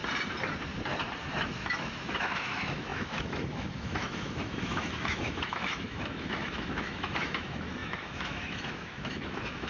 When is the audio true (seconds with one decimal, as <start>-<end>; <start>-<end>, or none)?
0.0-1.4